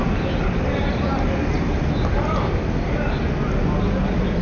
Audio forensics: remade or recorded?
recorded